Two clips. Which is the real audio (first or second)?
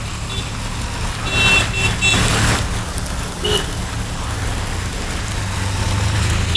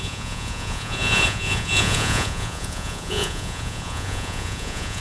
first